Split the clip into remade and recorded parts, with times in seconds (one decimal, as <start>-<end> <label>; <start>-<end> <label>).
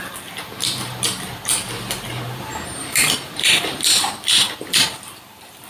0.0-2.1 recorded; 2.1-5.7 remade